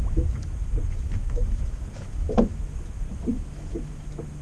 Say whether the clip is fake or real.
fake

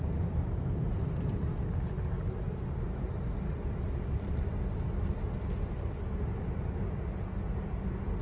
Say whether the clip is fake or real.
real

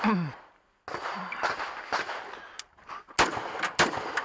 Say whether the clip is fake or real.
real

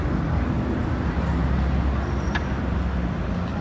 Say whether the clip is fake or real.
real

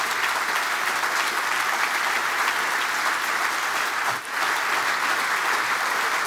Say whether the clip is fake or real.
real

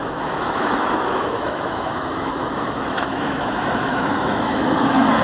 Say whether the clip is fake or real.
fake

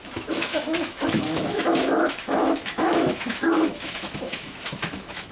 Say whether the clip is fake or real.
fake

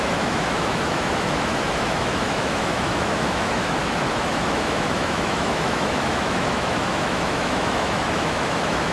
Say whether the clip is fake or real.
fake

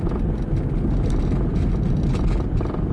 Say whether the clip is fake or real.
real